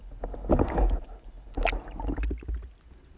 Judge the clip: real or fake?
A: real